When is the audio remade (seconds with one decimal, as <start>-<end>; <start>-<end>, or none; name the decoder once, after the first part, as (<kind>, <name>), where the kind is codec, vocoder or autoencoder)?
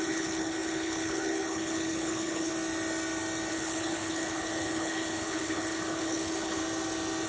0.0-2.5 (codec, HILCodec); 3.5-6.6